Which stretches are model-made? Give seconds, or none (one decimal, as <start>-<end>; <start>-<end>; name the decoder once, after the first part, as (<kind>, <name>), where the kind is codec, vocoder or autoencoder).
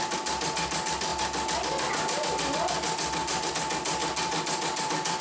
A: none